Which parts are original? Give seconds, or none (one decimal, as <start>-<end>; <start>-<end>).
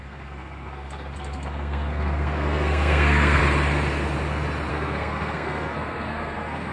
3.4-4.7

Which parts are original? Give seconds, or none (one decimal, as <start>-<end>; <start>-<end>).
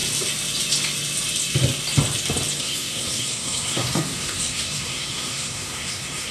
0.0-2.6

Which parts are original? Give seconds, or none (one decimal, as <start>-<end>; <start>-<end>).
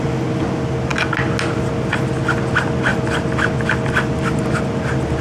0.0-5.2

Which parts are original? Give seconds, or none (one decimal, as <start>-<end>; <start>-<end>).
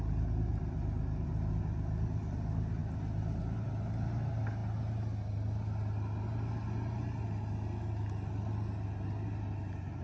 0.0-0.5; 1.6-10.0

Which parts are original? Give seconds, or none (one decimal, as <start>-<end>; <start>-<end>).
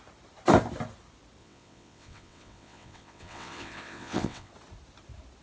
0.0-1.4; 4.5-5.4